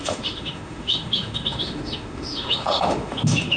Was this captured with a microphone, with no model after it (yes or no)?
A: no